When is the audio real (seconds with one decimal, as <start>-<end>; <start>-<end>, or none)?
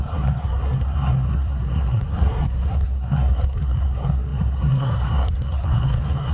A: none